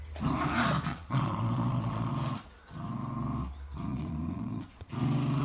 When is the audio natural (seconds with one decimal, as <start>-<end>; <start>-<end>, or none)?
0.0-0.9; 2.1-3.9; 4.9-5.4